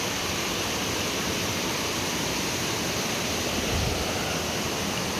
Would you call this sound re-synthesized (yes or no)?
no